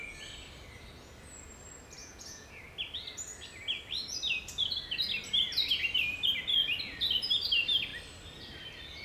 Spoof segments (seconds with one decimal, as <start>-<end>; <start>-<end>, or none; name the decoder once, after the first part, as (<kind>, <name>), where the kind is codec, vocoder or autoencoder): 2.0-2.5 (vocoder, Vocos)